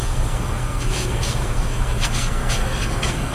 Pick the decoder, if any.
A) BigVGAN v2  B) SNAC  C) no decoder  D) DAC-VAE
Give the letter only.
B